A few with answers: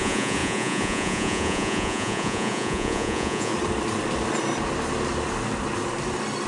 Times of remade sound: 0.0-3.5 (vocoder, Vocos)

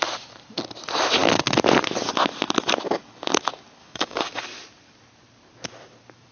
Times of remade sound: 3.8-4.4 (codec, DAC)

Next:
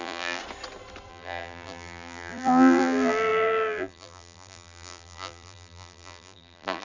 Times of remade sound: 0.0-0.4 (vocoder, BigVGAN v2); 1.1-6.8